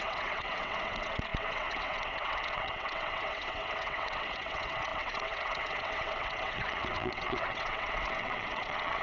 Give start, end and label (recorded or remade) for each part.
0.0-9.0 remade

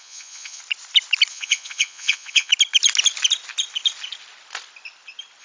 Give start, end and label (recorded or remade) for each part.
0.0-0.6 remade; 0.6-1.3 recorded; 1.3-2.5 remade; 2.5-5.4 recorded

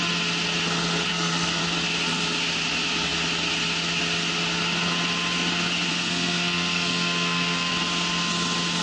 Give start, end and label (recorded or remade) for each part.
0.0-1.1 recorded; 1.1-1.6 remade; 1.6-5.9 recorded; 5.9-7.7 remade; 7.7-8.8 recorded